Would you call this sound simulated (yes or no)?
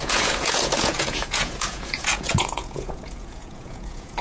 yes